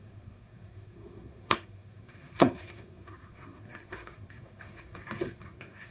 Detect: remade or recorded remade